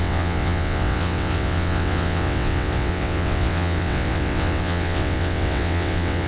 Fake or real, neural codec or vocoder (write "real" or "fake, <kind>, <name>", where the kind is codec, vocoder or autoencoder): fake, vocoder, WaveNeXt